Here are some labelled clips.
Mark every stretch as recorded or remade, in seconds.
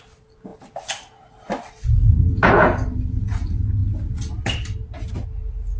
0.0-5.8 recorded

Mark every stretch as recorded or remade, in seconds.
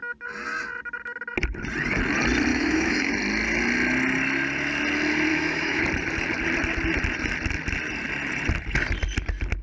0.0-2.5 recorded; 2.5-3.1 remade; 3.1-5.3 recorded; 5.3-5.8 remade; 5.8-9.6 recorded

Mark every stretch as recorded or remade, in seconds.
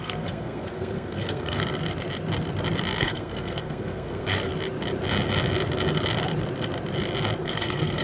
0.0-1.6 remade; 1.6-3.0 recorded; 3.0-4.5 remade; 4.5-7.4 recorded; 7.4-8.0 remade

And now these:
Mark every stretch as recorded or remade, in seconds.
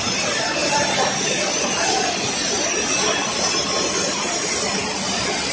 0.0-5.5 recorded